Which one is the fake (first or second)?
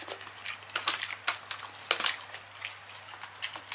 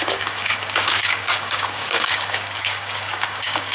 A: second